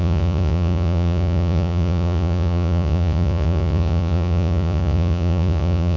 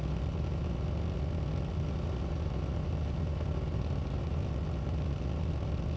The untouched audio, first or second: second